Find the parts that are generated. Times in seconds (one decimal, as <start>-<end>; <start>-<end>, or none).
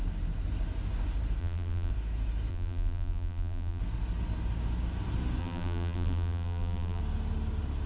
1.4-1.9; 2.5-3.8; 5.4-7.0